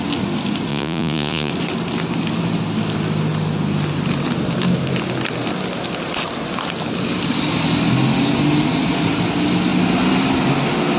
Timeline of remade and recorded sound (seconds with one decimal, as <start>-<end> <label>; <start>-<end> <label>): 0.0-0.7 recorded; 0.7-1.5 remade; 1.5-11.0 recorded